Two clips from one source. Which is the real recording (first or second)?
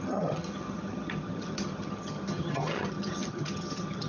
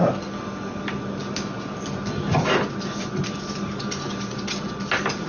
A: second